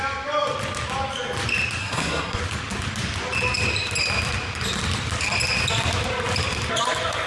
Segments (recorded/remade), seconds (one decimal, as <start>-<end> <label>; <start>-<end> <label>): 0.0-1.8 recorded; 1.8-2.4 remade; 2.4-7.3 recorded